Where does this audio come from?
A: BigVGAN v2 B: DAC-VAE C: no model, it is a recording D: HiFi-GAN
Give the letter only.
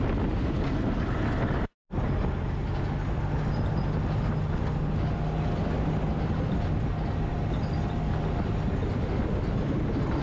C